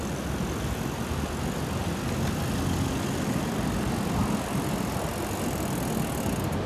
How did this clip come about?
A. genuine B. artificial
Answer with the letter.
A